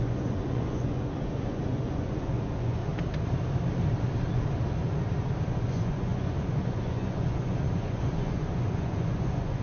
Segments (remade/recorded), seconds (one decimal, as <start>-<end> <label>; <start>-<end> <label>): 0.0-2.8 remade; 2.8-5.5 recorded; 5.5-9.6 remade